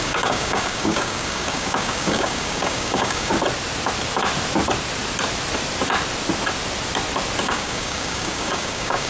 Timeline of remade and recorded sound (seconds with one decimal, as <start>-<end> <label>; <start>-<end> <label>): 0.0-3.3 remade; 3.3-7.4 recorded; 7.4-9.1 remade